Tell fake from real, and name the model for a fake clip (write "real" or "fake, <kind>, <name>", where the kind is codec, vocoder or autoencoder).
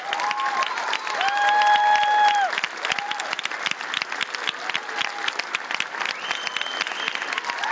real